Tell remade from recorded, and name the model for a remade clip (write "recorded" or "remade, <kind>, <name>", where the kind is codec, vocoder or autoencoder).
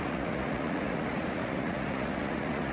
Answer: remade, vocoder, Vocos